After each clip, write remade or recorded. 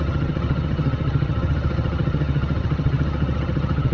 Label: remade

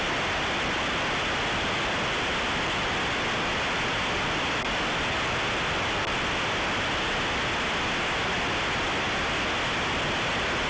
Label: recorded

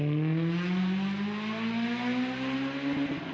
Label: recorded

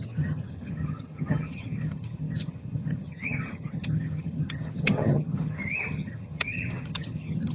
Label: remade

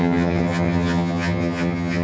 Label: remade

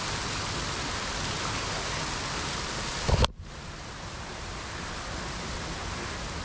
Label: recorded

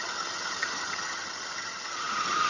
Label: remade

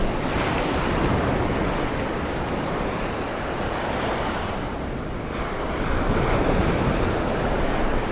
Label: recorded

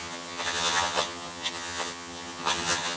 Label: remade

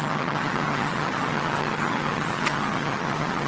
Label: remade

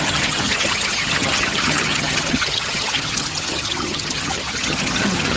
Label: remade